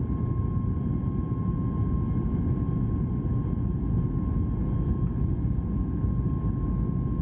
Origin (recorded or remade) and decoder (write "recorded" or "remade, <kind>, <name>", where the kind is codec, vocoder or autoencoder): recorded